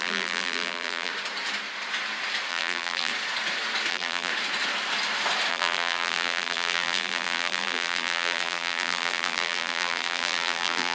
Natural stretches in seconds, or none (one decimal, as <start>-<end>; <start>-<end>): 1.1-2.5; 3.1-3.9; 4.3-5.5